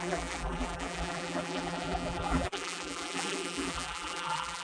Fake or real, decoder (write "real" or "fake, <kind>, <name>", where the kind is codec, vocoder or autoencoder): fake, vocoder, BigVGAN v2